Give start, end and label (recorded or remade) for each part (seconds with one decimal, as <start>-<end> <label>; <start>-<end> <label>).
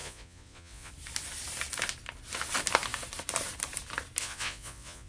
0.0-0.9 remade; 0.9-4.2 recorded; 4.2-5.1 remade